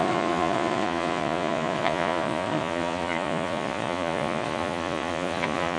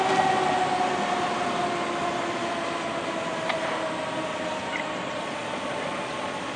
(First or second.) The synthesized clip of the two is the first